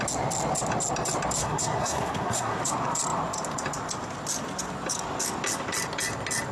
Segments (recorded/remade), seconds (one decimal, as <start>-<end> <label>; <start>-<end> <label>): 0.0-1.4 recorded; 1.4-2.6 remade; 2.6-6.5 recorded